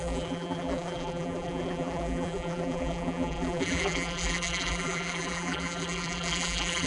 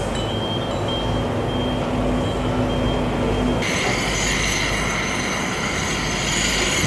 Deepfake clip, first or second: first